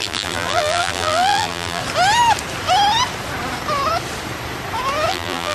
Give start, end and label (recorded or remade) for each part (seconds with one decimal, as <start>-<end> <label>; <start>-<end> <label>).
0.0-1.8 remade; 1.8-5.1 recorded; 5.1-5.5 remade